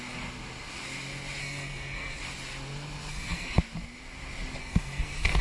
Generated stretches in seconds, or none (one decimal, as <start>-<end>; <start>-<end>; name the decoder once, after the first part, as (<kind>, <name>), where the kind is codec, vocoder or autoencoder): 1.4-2.2 (codec, SNAC); 3.1-3.6; 4.6-5.4